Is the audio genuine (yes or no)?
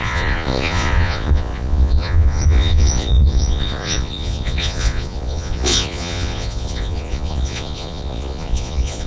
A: no